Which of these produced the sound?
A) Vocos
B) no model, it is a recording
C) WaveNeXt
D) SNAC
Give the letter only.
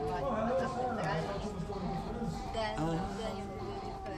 B